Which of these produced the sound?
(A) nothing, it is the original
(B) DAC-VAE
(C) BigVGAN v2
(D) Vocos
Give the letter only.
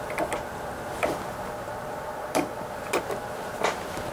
C